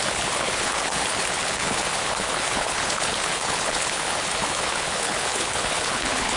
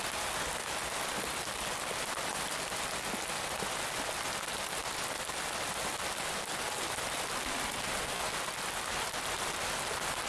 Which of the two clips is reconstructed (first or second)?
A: first